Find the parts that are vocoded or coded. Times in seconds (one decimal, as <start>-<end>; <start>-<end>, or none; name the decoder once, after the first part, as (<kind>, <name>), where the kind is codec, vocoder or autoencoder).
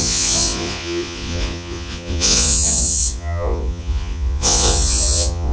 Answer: 0.0-5.5 (vocoder, Vocos)